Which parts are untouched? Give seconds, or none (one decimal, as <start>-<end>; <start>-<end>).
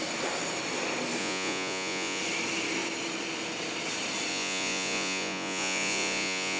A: 0.0-1.2; 2.2-4.3